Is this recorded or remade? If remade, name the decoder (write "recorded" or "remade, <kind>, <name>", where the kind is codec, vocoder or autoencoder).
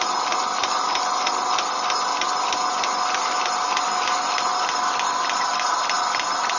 recorded